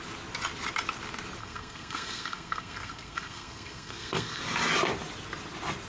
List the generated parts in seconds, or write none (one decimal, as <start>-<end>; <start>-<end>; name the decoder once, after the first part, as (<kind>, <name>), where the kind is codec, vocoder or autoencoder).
1.4-4.4 (codec, SNAC)